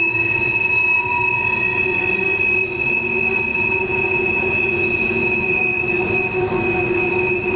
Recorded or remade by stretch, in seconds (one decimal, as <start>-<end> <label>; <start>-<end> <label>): 0.0-3.5 recorded; 3.5-5.6 remade; 5.6-7.6 recorded